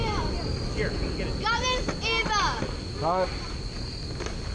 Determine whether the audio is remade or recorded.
recorded